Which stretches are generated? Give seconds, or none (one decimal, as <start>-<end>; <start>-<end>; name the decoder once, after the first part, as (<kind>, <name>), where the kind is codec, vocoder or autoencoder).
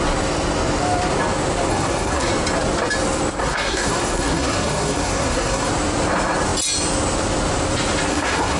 1.7-2.3 (codec, SNAC); 3.4-5.7; 8.1-8.6